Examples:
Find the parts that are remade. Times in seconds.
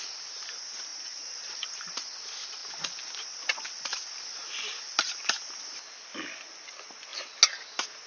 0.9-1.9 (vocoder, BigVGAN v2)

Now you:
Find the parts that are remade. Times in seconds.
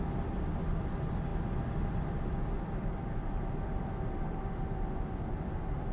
none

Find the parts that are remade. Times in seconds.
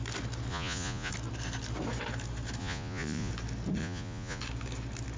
0.5-1.1 (vocoder, Vocos); 2.6-3.3; 3.8-4.4